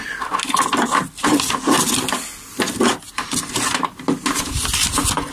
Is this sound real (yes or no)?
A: yes